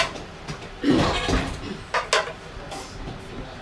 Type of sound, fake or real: real